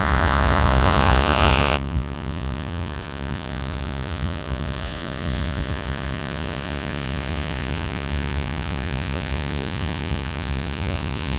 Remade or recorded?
remade